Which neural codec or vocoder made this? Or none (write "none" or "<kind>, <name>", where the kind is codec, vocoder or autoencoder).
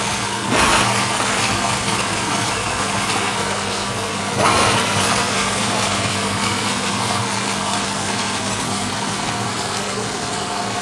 codec, SNAC